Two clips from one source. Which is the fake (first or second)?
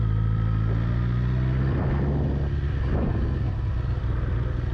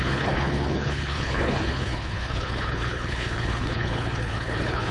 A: second